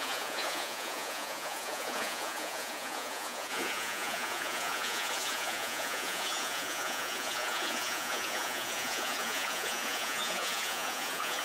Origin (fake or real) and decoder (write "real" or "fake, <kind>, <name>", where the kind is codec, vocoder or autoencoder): fake, vocoder, Vocos